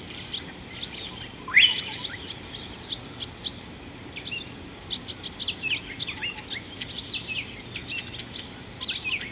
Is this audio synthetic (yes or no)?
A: no